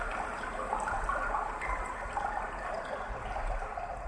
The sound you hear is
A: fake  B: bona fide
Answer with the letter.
B